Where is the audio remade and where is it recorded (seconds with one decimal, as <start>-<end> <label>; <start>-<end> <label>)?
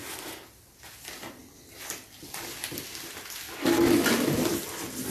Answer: 0.0-5.1 recorded